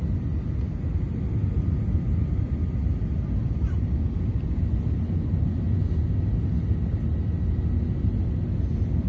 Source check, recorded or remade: recorded